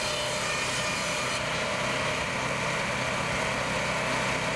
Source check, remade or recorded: recorded